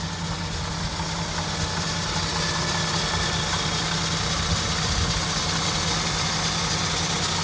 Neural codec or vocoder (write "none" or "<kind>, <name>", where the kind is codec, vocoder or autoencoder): none